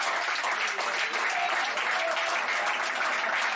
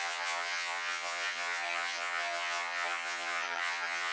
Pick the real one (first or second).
first